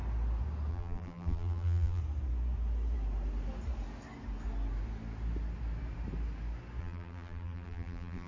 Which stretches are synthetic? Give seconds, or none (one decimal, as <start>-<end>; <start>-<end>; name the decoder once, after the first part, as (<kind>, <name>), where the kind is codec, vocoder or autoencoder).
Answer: 0.7-2.0 (vocoder, BigVGAN v2); 6.8-8.3